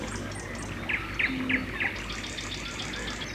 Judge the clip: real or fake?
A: real